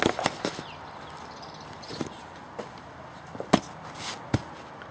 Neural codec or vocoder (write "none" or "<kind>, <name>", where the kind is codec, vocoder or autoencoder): none